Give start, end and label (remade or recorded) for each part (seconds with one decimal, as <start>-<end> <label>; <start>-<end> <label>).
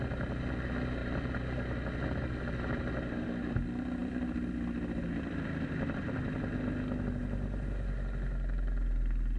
0.0-4.0 recorded; 4.0-6.2 remade; 6.2-9.4 recorded